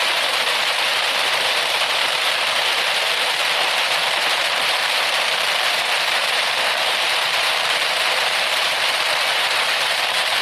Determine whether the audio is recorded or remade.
remade